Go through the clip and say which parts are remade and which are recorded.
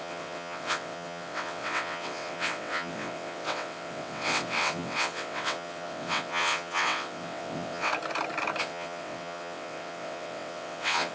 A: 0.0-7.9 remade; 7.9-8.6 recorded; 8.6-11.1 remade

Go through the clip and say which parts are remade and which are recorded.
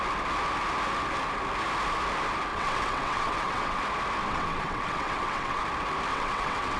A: 0.0-2.5 recorded; 2.5-3.8 remade; 3.8-4.2 recorded; 4.2-5.6 remade; 5.6-6.1 recorded; 6.1-6.8 remade